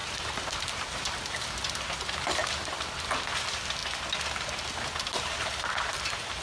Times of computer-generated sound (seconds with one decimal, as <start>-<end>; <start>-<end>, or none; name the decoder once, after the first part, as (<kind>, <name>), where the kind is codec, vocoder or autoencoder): 0.0-3.1 (vocoder, BigVGAN v2)